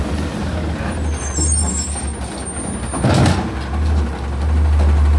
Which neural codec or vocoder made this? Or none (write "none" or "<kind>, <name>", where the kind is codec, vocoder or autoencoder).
none